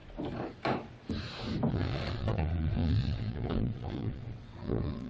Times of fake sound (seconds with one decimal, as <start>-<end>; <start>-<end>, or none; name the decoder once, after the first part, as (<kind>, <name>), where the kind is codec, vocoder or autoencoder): 1.7-5.1 (vocoder, WaveNeXt)